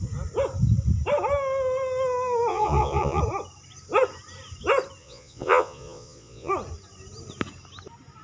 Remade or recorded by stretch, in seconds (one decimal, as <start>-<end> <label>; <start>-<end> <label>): 0.0-2.5 recorded; 2.5-3.2 remade; 3.2-5.0 recorded; 5.0-6.5 remade; 6.5-8.2 recorded

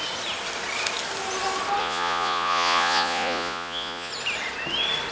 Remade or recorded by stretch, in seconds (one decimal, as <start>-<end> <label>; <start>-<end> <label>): 0.0-1.8 recorded; 1.8-4.1 remade; 4.1-5.1 recorded

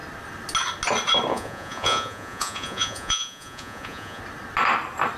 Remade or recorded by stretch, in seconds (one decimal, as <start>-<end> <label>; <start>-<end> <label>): 0.0-1.3 recorded; 1.3-4.2 remade; 4.2-5.2 recorded

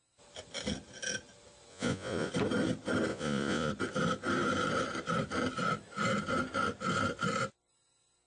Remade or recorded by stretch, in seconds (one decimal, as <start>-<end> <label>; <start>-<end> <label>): 0.0-1.7 recorded; 1.7-2.3 remade; 2.3-3.1 recorded; 3.1-3.7 remade; 3.7-8.3 recorded